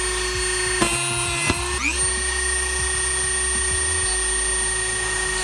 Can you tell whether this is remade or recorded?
recorded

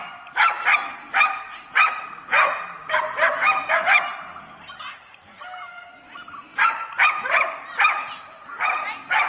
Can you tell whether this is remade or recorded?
recorded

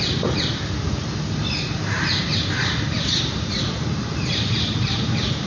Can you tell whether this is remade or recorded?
remade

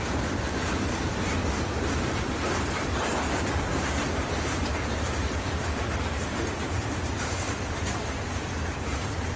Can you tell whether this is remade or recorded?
remade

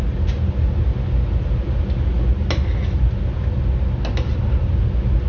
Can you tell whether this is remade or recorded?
recorded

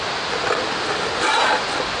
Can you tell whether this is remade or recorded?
recorded